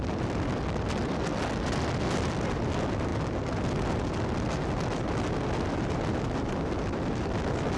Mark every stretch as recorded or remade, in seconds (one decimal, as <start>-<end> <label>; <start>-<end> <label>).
0.0-7.8 recorded